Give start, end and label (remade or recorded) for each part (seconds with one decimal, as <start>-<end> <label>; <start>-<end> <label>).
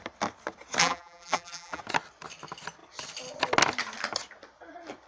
0.0-0.8 recorded; 0.8-1.8 remade; 1.8-5.1 recorded